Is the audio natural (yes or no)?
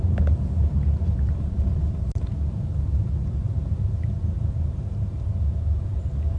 no